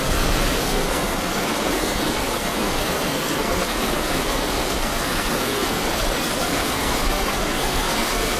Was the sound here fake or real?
fake